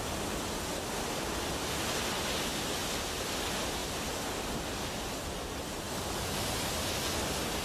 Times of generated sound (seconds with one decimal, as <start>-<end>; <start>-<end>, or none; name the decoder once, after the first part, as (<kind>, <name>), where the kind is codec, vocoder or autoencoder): none

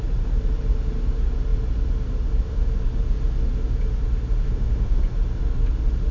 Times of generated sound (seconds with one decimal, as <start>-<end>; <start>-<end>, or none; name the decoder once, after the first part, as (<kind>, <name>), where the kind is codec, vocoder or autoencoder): 4.4-5.0 (autoencoder, DAC-VAE)

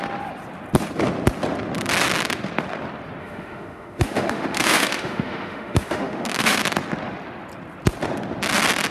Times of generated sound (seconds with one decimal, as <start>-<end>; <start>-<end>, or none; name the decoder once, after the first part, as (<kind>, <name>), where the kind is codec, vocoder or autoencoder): 3.2-6.6 (autoencoder, DAC-VAE)

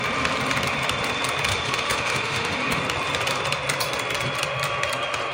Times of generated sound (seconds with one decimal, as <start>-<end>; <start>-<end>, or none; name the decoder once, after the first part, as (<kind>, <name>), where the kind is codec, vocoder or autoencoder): 1.5-2.8 (autoencoder, DAC-VAE)